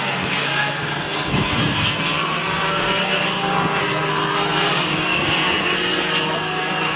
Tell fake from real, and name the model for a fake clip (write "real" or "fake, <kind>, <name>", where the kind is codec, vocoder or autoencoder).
fake, codec, SNAC